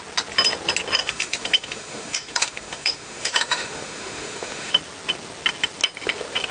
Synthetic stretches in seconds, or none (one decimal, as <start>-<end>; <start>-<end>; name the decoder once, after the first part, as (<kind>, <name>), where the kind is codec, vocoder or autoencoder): 1.0-4.7 (autoencoder, DAC-VAE)